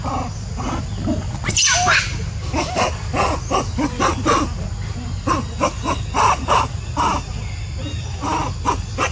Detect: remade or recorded recorded